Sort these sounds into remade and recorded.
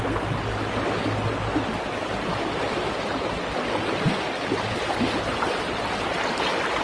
recorded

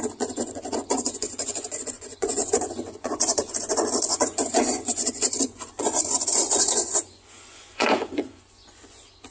remade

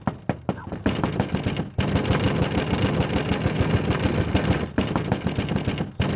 recorded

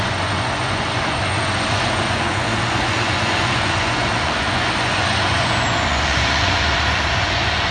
remade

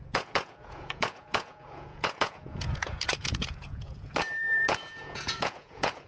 remade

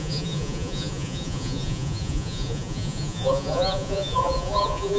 remade